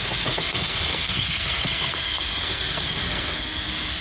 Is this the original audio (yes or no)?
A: no